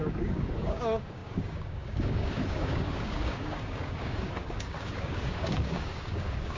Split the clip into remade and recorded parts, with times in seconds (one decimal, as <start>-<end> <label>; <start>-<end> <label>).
0.0-6.6 remade